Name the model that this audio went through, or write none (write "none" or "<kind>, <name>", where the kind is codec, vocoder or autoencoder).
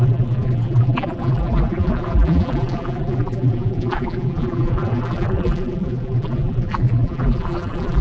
vocoder, BigVGAN v2